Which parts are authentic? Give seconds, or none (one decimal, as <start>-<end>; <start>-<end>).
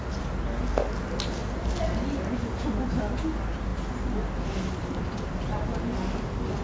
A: 0.0-6.6